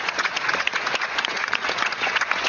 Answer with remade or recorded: remade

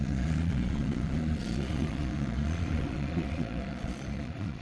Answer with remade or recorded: remade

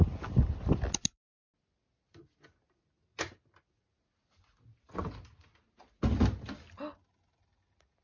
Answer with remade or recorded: recorded